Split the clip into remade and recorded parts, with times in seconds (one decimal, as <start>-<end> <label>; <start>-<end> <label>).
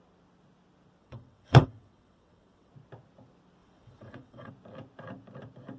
0.0-1.0 recorded; 1.0-2.7 remade; 2.7-3.6 recorded; 3.6-4.5 remade; 4.5-5.8 recorded